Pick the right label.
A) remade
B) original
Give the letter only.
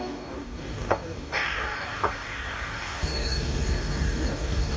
A